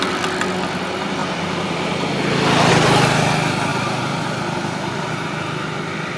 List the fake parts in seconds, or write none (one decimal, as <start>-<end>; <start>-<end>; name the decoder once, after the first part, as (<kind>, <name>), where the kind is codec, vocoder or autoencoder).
3.7-5.1 (vocoder, BigVGAN v2)